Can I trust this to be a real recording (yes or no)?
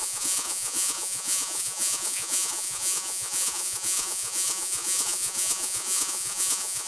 no